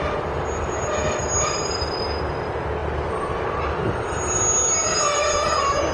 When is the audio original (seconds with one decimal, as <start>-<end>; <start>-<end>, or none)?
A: 0.0-5.9